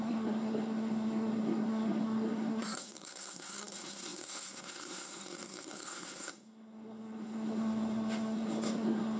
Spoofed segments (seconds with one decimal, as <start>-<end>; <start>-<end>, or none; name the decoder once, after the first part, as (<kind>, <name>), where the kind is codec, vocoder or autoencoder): 0.0-9.2 (codec, SNAC)